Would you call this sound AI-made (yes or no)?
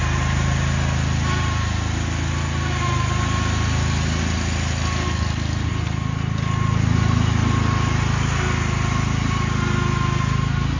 no